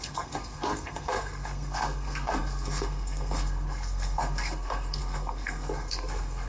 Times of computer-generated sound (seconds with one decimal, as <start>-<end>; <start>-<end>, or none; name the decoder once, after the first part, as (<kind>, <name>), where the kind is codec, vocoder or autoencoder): 0.0-6.5 (codec, SNAC)